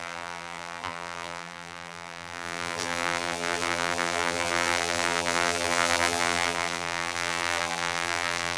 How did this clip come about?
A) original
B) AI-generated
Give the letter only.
B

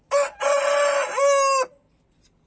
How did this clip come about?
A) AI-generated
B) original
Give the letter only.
B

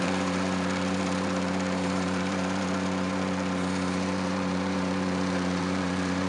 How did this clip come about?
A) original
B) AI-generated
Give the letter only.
B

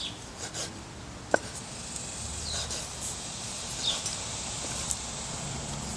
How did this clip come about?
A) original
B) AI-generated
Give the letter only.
A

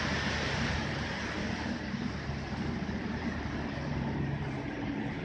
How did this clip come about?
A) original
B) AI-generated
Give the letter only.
B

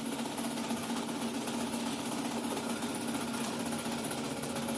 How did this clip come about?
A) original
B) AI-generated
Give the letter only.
A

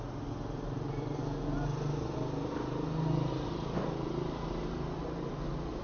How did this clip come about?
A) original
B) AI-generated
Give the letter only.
A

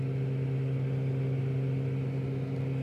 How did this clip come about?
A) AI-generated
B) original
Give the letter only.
B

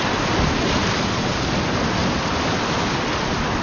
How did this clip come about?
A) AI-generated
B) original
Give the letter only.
B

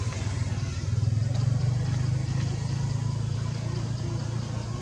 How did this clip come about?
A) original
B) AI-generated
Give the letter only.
A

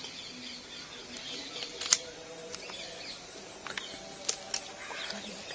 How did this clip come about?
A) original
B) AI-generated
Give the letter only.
A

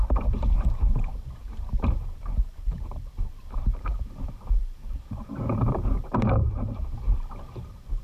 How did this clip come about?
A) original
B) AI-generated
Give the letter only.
B